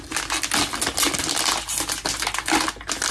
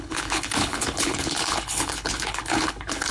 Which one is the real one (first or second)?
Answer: first